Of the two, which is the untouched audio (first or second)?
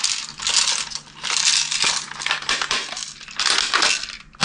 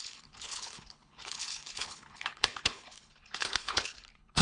first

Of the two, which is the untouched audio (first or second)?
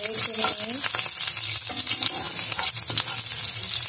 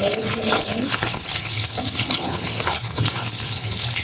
first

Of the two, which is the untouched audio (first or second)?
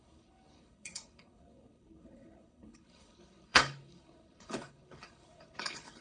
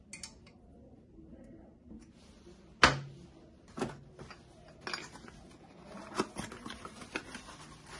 second